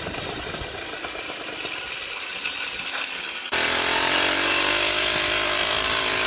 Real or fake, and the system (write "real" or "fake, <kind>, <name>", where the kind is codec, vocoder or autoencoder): fake, vocoder, BigVGAN v2